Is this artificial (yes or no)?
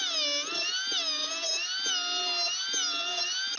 no